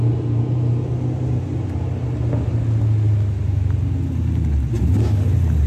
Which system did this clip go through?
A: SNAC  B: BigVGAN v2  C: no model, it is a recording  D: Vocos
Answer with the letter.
C